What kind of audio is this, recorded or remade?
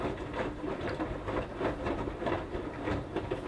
remade